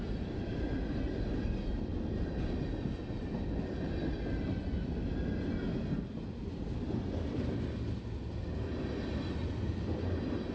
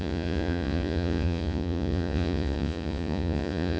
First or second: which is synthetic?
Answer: second